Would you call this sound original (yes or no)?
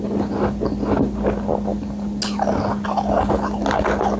yes